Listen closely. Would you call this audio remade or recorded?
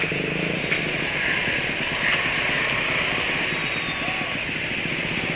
recorded